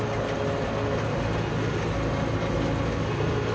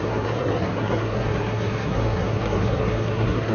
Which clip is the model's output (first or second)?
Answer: second